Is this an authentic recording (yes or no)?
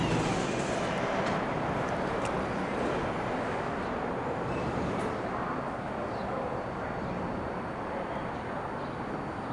yes